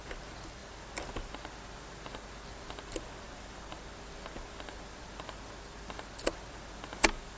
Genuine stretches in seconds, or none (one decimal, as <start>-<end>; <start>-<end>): 0.0-7.4